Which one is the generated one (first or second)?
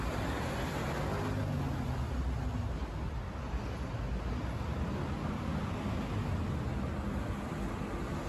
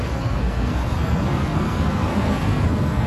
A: second